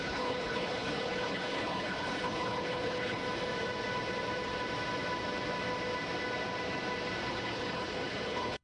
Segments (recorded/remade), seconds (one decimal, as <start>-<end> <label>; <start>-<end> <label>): 0.0-3.2 remade; 3.2-7.3 recorded; 7.3-8.6 remade